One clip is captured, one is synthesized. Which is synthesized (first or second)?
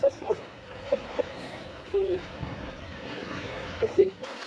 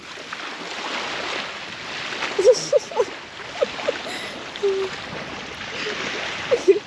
first